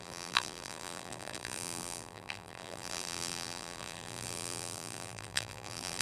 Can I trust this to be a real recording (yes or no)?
no